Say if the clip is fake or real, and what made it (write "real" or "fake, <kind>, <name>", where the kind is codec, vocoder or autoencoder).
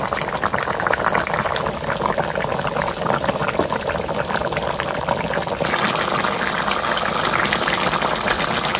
real